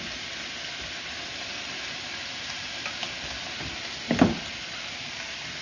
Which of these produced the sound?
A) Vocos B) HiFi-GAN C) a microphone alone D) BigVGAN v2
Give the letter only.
C